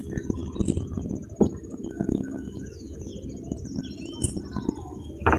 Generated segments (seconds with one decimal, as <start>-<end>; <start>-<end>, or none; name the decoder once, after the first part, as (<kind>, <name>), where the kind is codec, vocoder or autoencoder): 0.0-0.4 (autoencoder, DAC-VAE); 1.9-3.1; 4.8-5.4